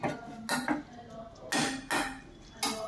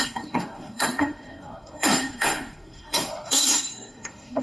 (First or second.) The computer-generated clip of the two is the second